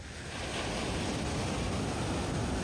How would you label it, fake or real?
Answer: real